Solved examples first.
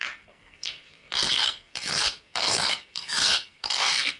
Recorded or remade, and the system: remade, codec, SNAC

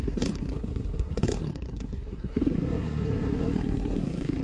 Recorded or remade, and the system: remade, codec, SNAC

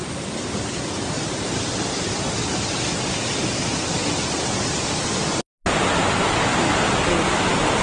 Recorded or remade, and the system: recorded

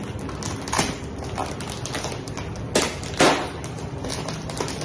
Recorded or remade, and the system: recorded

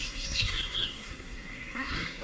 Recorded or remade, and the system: remade, codec, SNAC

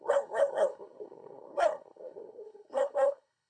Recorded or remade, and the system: remade, codec, SNAC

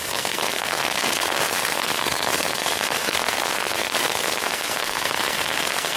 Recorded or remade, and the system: remade, codec, SNAC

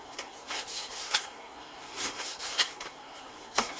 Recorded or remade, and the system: remade, codec, SNAC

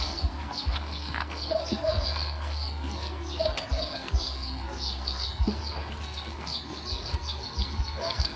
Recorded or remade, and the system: remade, codec, SNAC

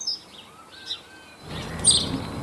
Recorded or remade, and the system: recorded